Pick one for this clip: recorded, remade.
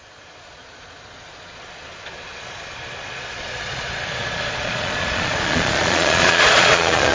remade